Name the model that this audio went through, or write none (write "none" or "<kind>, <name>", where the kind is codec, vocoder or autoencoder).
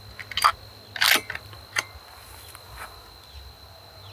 none